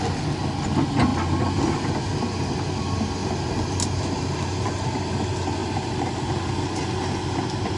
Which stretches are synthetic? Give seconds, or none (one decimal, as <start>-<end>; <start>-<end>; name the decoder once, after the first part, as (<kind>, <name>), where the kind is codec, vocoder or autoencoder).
3.2-5.0 (vocoder, BigVGAN v2)